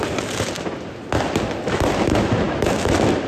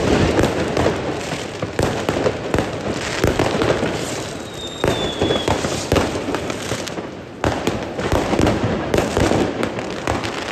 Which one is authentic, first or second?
first